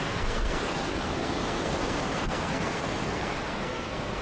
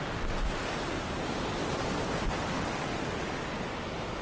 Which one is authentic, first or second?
second